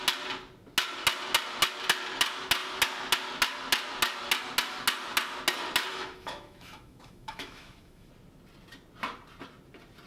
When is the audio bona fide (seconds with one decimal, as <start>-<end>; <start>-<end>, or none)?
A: 0.0-5.9; 8.1-10.1